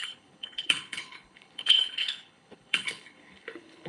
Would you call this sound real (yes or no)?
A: no